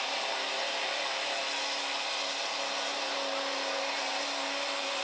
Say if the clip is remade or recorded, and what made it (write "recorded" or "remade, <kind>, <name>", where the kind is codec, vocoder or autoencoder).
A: recorded